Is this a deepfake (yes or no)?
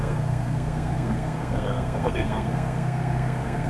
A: yes